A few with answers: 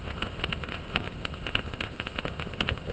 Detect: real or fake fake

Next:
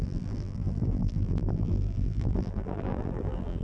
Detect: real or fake fake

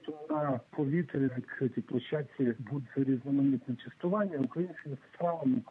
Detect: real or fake fake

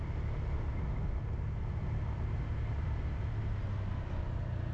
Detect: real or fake real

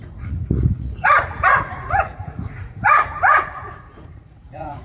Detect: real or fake fake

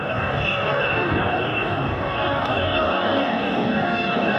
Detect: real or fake fake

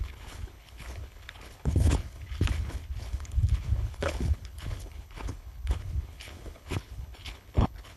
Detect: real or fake fake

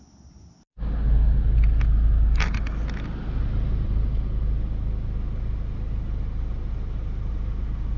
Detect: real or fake real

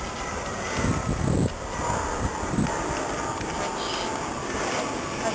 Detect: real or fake real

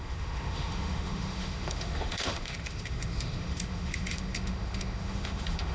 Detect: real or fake fake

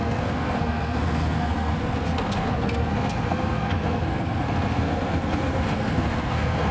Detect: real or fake fake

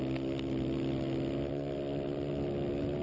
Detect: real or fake real